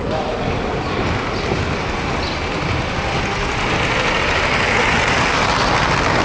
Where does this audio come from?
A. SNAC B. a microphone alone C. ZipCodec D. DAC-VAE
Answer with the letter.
B